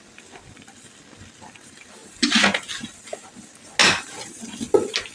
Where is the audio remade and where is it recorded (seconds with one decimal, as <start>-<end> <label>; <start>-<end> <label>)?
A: 0.0-3.8 recorded; 3.8-4.4 remade; 4.4-5.1 recorded